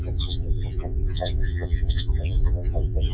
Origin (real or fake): fake